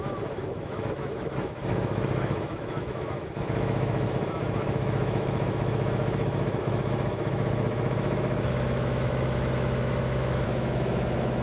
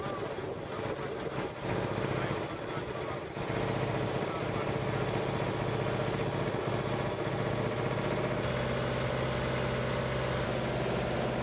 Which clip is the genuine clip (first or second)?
second